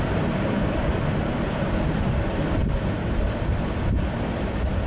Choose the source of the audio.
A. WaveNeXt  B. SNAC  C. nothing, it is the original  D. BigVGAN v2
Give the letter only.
D